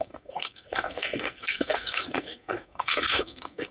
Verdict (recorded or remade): remade